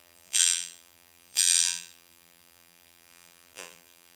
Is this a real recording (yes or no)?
no